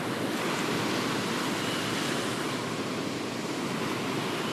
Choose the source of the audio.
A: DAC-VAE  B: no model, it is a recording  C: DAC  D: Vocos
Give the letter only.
B